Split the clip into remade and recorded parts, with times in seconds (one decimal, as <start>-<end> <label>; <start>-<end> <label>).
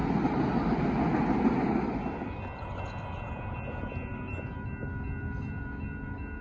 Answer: 0.0-6.4 recorded